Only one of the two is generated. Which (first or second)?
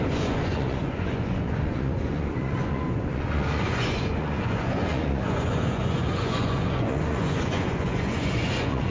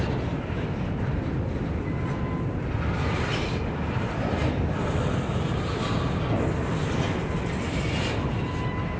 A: first